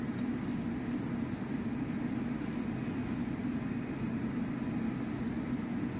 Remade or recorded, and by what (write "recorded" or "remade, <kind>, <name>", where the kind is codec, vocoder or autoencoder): recorded